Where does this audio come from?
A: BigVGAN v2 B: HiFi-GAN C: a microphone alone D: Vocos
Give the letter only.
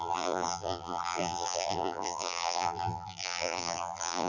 A